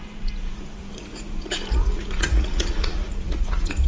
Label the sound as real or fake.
fake